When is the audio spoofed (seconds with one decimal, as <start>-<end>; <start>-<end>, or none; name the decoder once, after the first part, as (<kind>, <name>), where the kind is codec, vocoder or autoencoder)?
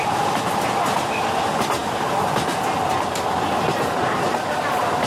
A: none